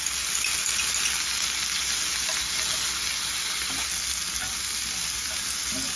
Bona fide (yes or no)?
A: yes